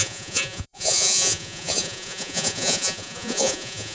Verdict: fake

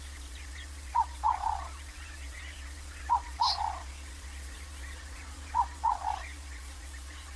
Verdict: fake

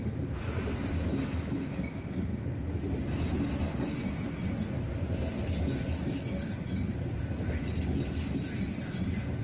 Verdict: real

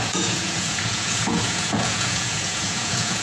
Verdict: fake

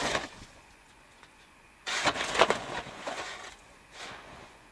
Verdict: fake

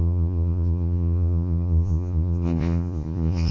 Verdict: fake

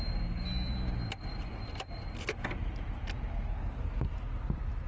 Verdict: real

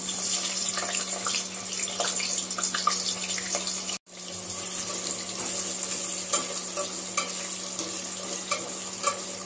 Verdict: real